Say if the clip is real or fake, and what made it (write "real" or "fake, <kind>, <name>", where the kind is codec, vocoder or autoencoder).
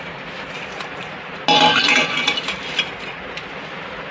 real